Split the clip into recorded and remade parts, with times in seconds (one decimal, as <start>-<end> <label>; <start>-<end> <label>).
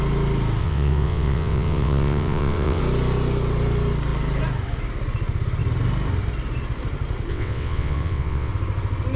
0.0-0.6 recorded; 0.6-2.8 remade; 2.8-7.3 recorded; 7.3-8.5 remade; 8.5-9.2 recorded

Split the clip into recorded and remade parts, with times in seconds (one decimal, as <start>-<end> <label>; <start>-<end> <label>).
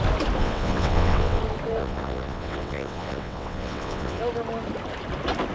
0.0-0.4 recorded; 0.4-1.4 remade; 1.4-1.8 recorded; 1.8-4.2 remade; 4.2-5.5 recorded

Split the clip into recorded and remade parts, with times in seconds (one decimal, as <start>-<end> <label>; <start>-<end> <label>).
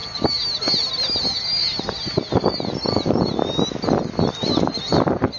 0.0-5.4 recorded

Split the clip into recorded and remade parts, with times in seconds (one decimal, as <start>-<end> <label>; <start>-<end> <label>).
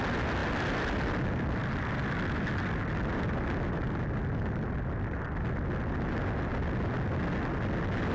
0.0-8.1 recorded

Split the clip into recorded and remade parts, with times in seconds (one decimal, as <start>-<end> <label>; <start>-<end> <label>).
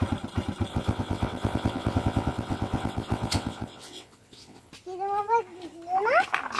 0.0-0.7 recorded; 0.7-4.7 remade; 4.7-6.6 recorded